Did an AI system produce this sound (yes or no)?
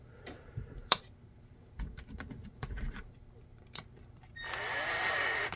yes